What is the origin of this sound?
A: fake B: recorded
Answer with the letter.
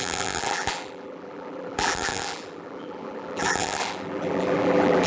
A